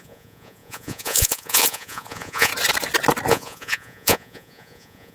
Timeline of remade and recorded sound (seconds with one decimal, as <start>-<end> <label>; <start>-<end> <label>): 0.0-2.5 remade; 2.5-3.3 recorded; 3.3-5.1 remade